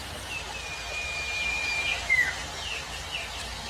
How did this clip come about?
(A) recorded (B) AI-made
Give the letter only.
B